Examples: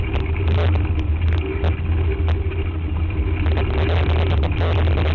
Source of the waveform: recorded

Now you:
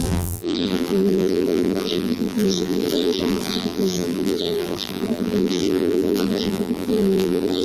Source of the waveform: remade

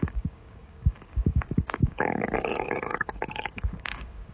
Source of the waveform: remade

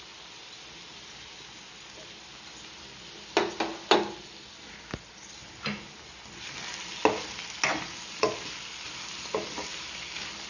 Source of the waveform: recorded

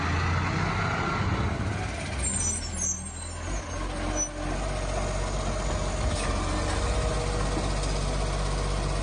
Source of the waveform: recorded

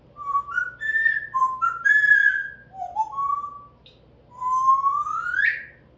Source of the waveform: recorded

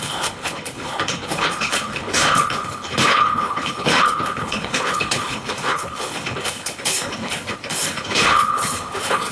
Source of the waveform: remade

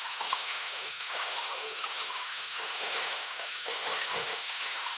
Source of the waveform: remade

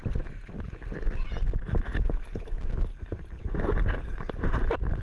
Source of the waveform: recorded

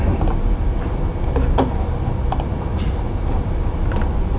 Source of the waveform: recorded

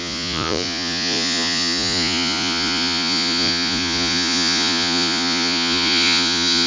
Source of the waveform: remade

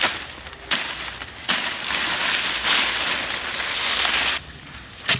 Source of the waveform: recorded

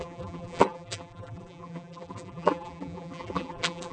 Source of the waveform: remade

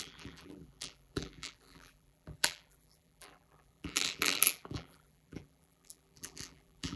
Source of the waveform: remade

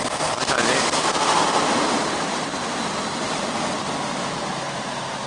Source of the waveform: recorded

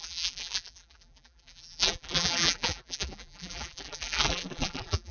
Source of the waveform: remade